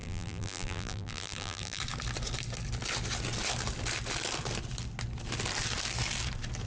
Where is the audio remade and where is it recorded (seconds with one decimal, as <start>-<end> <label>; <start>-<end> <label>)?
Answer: 0.0-1.8 remade; 1.8-6.7 recorded